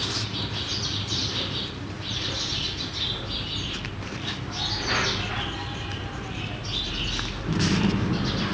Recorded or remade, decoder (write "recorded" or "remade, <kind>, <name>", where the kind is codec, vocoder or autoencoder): recorded